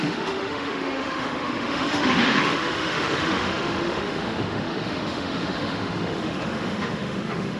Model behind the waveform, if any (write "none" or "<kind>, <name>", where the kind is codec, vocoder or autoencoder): autoencoder, DAC-VAE